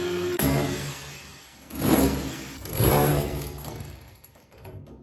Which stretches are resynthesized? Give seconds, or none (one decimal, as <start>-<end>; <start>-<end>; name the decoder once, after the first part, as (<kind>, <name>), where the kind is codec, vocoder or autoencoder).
0.0-5.0 (codec, SNAC)